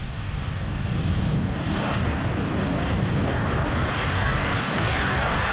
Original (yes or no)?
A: no